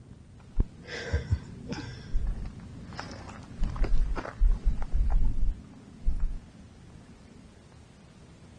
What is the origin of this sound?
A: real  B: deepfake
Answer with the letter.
A